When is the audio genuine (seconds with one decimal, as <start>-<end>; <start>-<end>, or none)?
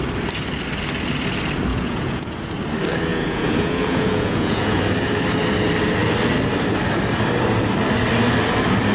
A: 0.0-1.7; 2.5-3.1; 4.8-8.9